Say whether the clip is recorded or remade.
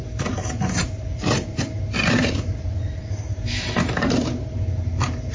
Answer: remade